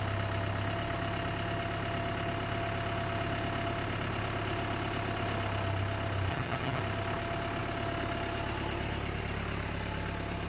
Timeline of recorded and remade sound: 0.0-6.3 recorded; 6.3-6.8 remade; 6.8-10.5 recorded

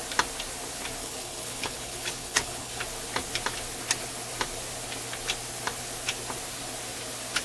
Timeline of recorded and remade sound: 0.0-1.0 recorded; 1.0-2.8 remade; 2.8-7.4 recorded

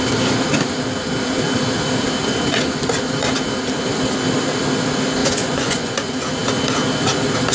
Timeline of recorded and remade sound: 0.0-5.2 recorded; 5.2-6.0 remade; 6.0-7.5 recorded

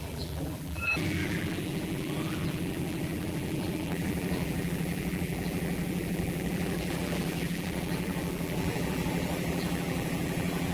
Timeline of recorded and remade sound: 0.0-10.7 remade

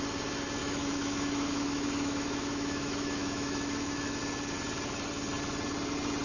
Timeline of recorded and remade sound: 0.0-0.6 recorded; 0.6-4.2 remade; 4.2-6.2 recorded

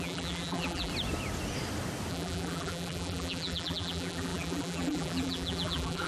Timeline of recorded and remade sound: 0.0-0.9 remade; 0.9-2.1 recorded; 2.1-6.1 remade